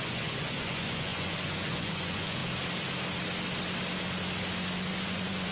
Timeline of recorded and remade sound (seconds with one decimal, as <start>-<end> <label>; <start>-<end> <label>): 0.0-2.4 remade; 2.4-4.9 recorded; 4.9-5.5 remade